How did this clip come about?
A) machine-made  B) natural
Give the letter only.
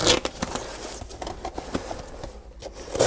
B